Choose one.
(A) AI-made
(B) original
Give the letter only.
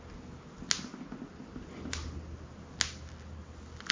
B